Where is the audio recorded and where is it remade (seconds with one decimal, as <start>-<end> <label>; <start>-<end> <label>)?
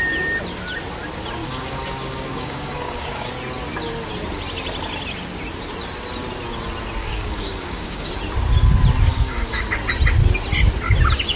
0.0-1.4 recorded; 1.4-3.3 remade; 3.3-7.0 recorded; 7.0-8.1 remade; 8.1-9.1 recorded; 9.1-9.6 remade; 9.6-11.4 recorded